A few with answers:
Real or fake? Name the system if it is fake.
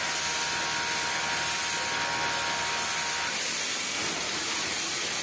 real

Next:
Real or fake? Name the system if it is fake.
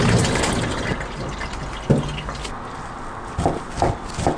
real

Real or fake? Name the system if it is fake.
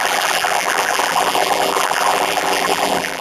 fake, vocoder, BigVGAN v2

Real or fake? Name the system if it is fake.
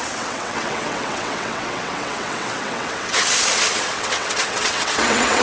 fake, vocoder, WaveNeXt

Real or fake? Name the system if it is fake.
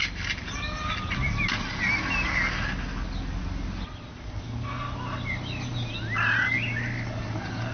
real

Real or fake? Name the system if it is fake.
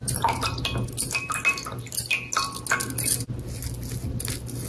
real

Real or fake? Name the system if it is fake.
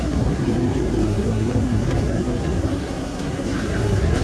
fake, codec, SNAC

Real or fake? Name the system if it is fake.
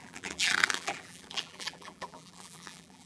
fake, vocoder, BigVGAN v2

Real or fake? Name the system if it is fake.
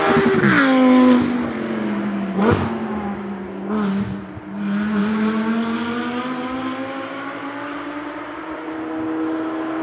real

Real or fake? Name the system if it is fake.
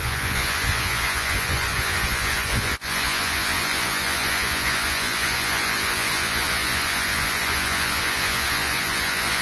fake, vocoder, Vocos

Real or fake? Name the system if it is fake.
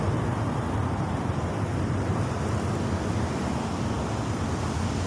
real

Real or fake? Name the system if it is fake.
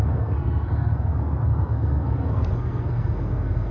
fake, codec, SNAC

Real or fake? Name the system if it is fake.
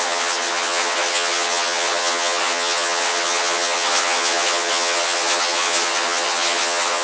fake, vocoder, HiFi-GAN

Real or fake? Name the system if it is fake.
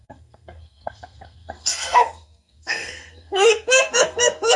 fake, codec, SNAC